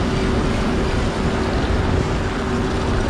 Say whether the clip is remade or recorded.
recorded